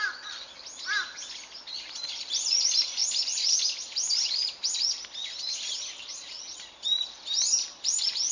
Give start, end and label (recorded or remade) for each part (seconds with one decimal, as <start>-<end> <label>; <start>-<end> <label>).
0.0-6.1 recorded; 6.1-6.6 remade; 6.6-8.3 recorded